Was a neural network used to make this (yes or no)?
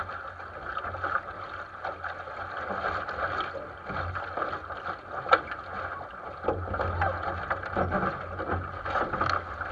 no